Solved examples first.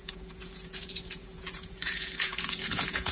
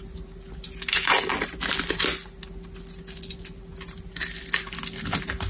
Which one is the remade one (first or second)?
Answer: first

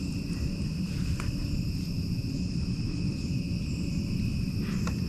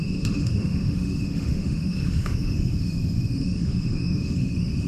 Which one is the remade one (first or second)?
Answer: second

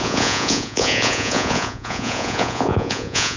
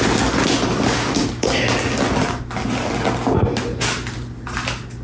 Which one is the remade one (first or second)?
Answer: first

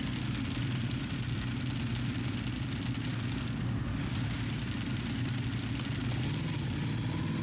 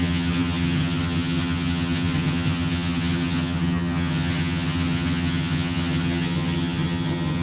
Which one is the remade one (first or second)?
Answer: second